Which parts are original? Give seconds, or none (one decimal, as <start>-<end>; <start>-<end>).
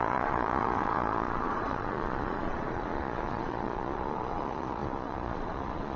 none